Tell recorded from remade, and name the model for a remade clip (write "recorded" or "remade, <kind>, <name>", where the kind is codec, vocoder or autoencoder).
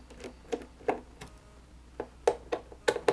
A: recorded